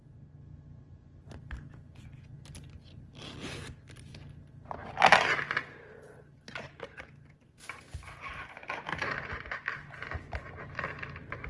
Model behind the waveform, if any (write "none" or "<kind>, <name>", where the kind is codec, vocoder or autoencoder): none